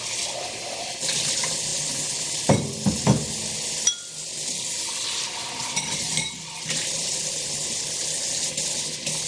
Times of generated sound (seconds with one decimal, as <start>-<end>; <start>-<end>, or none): none